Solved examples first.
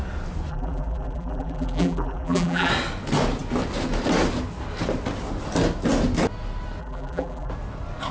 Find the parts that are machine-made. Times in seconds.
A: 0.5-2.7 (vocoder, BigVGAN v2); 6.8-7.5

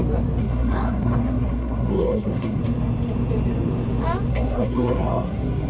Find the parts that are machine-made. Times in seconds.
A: 0.4-2.6 (codec, SNAC); 4.3-5.7

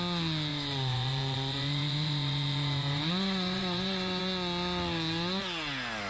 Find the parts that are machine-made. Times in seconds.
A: 0.5-4.2 (vocoder, Vocos)

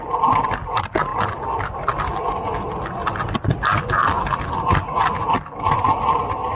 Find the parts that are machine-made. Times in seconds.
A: none

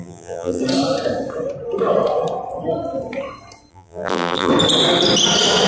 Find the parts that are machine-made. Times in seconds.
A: 0.0-0.6 (vocoder, BigVGAN v2); 3.7-4.5

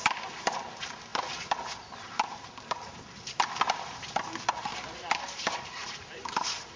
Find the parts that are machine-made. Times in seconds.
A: 0.0-4.7 (vocoder, BigVGAN v2); 5.5-6.8

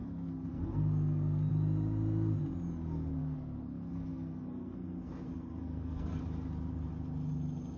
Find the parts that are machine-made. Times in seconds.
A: 0.0-1.5 (codec, SNAC); 3.2-6.2